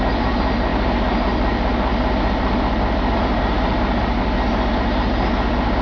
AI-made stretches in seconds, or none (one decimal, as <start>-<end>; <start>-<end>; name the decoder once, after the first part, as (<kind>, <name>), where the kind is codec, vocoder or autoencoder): none